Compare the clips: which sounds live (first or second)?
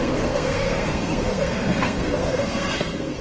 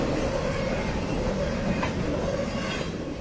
second